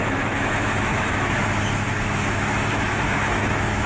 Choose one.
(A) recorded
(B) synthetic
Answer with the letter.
B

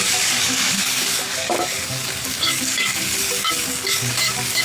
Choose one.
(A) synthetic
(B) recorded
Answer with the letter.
A